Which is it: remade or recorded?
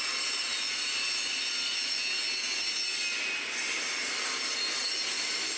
recorded